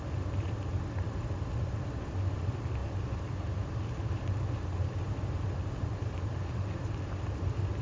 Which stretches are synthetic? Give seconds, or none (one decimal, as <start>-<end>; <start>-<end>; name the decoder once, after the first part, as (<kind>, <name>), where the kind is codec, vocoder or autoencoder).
none